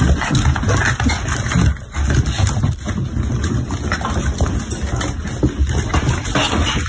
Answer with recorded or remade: recorded